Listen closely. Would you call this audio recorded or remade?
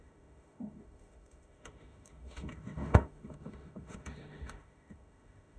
remade